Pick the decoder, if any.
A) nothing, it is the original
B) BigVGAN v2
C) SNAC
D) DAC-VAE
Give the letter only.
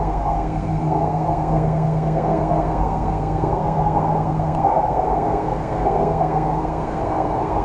C